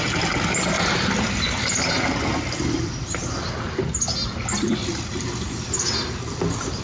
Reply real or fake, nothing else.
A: real